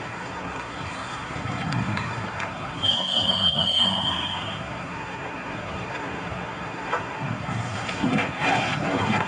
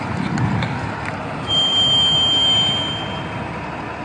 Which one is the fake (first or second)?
first